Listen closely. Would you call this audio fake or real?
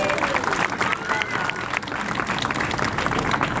real